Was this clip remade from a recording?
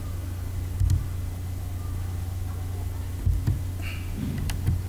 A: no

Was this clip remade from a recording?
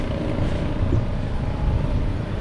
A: yes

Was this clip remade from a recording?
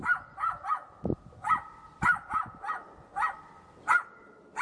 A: no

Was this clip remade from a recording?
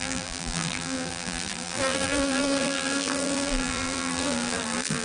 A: yes